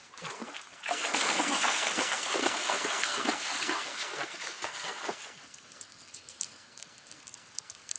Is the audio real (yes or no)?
no